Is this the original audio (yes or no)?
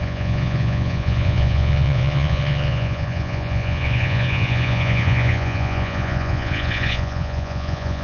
no